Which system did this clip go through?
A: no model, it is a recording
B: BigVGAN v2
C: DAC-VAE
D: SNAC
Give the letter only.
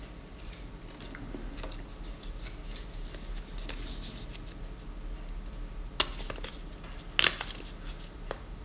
A